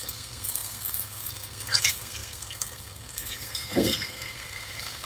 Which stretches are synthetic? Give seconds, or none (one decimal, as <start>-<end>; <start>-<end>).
0.0-5.1